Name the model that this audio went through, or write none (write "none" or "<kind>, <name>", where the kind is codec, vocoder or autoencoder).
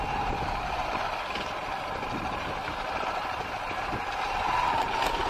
none